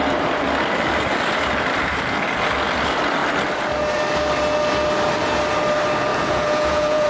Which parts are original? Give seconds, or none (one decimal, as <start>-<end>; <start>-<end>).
0.0-6.1